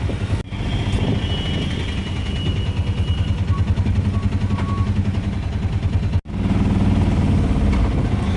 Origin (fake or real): real